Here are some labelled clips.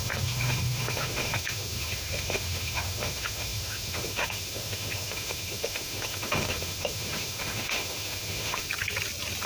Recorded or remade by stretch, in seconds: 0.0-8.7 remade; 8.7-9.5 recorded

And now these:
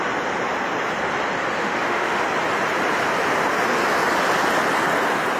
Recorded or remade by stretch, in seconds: 0.0-1.6 recorded; 1.6-2.2 remade; 2.2-5.4 recorded

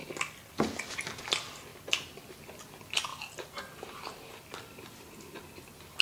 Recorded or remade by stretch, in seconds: 0.0-6.0 recorded

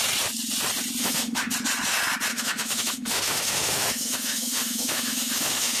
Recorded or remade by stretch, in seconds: 0.0-1.0 recorded; 1.0-1.5 remade; 1.5-2.3 recorded; 2.3-5.8 remade

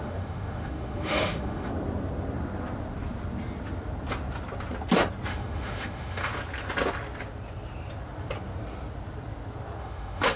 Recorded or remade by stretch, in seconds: 0.0-1.7 remade; 1.7-5.3 recorded; 5.3-6.3 remade; 6.3-9.8 recorded; 9.8-10.4 remade